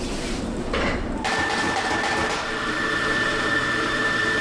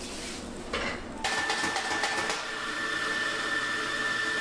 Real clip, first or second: second